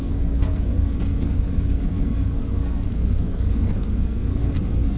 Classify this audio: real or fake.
fake